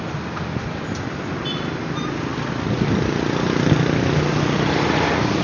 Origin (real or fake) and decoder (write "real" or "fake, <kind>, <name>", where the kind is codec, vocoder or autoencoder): real